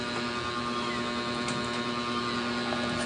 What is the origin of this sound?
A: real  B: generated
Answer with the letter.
A